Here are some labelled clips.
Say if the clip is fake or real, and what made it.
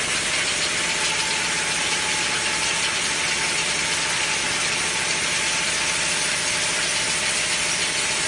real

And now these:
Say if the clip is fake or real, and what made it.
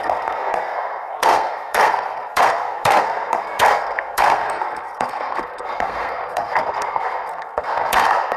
fake, codec, SNAC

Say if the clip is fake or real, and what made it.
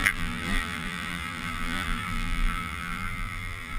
fake, vocoder, BigVGAN v2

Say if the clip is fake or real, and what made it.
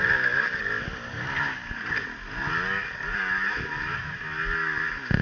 real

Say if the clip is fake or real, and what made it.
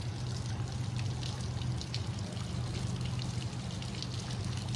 real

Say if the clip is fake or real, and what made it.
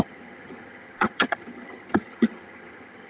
fake, vocoder, HiFi-GAN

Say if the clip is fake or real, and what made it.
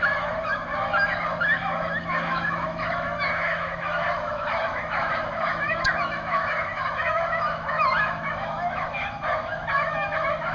fake, autoencoder, DAC-VAE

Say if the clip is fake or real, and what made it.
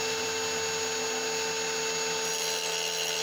real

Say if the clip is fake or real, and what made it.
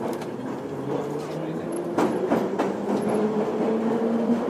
real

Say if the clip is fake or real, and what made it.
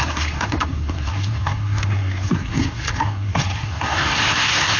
fake, codec, SNAC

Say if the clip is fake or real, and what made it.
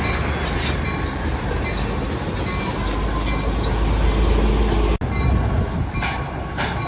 real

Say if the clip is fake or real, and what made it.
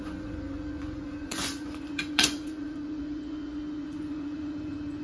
fake, vocoder, Vocos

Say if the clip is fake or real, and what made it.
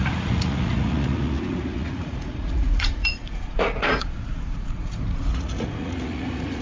fake, vocoder, Vocos